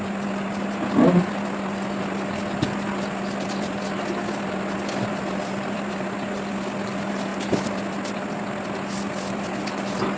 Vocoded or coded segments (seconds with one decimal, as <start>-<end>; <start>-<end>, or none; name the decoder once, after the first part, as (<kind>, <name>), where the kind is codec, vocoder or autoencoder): none